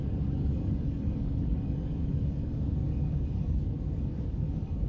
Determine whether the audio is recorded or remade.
remade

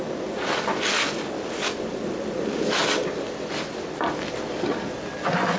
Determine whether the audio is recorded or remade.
recorded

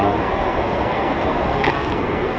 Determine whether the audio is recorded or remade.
remade